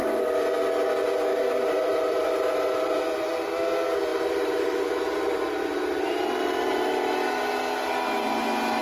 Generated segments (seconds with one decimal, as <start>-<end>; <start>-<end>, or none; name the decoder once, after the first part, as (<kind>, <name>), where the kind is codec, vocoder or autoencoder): 1.3-2.3 (vocoder, BigVGAN v2); 4.1-7.1